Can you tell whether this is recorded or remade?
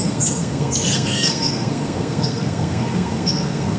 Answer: remade